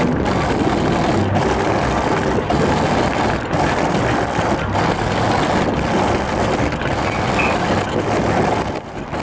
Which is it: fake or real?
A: real